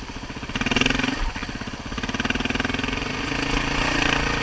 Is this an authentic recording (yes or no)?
yes